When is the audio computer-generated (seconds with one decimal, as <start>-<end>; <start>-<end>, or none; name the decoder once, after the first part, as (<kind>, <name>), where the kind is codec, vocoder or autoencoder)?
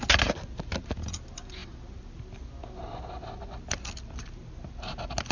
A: none